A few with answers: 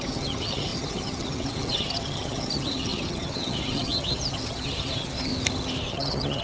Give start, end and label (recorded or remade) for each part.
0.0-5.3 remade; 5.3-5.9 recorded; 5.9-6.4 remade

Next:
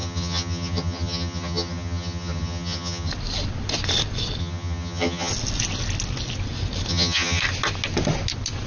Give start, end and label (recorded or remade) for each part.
0.0-3.1 remade; 3.1-4.4 recorded; 4.4-5.3 remade; 5.3-6.9 recorded; 6.9-7.4 remade; 7.4-8.7 recorded